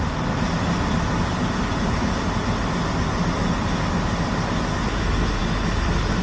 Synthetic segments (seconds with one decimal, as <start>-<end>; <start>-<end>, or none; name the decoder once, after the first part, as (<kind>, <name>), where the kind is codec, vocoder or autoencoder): none